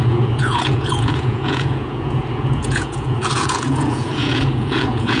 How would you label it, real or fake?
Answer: fake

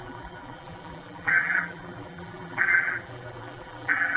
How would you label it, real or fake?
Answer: fake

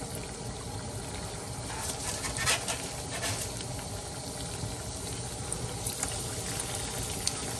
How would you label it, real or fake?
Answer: real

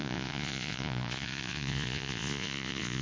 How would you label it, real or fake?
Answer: fake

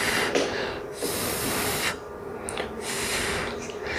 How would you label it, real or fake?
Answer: real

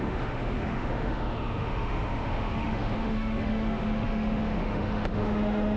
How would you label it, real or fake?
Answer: fake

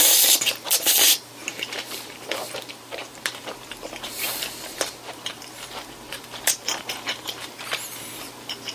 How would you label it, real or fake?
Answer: fake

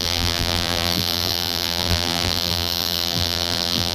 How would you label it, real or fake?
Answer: fake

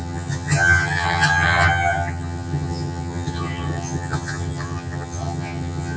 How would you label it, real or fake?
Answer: fake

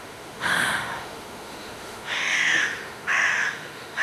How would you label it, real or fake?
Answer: fake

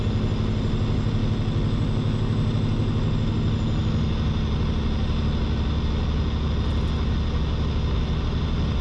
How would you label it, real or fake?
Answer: real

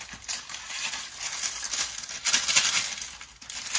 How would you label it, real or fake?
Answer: real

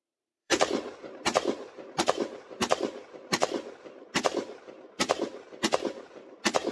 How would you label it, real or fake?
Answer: fake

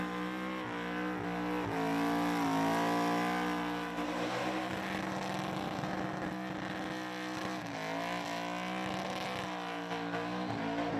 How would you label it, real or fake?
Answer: real